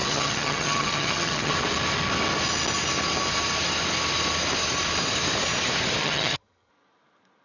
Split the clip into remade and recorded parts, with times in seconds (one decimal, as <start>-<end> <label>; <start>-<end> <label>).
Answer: 0.0-1.5 remade; 1.5-6.0 recorded; 6.0-6.7 remade; 6.7-7.4 recorded